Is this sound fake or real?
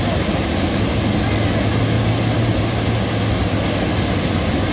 real